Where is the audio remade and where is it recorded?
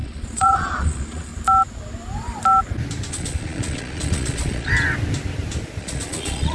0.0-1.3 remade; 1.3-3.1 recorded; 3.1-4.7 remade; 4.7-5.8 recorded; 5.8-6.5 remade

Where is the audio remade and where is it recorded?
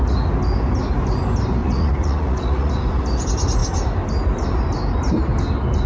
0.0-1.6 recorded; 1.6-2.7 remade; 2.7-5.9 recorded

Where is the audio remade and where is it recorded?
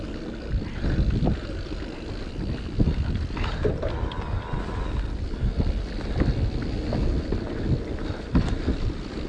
0.0-9.3 recorded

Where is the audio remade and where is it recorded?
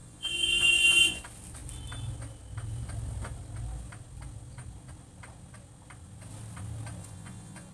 0.0-1.2 remade; 1.2-7.0 recorded; 7.0-7.7 remade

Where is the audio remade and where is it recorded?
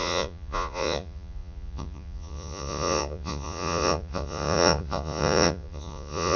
0.0-6.4 remade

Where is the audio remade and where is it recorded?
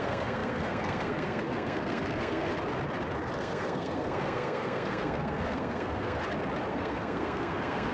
0.0-2.5 remade; 2.5-3.4 recorded; 3.4-6.2 remade; 6.2-6.7 recorded; 6.7-7.9 remade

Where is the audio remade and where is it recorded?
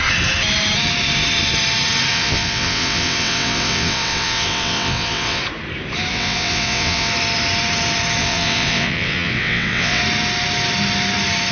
0.0-2.1 recorded; 2.1-5.4 remade; 5.4-6.1 recorded; 6.1-7.1 remade; 7.1-8.2 recorded; 8.2-10.0 remade; 10.0-11.5 recorded